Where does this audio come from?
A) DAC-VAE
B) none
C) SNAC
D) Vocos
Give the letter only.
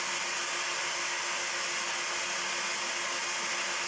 B